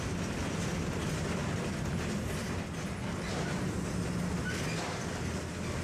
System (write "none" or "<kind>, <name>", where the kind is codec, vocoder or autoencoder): none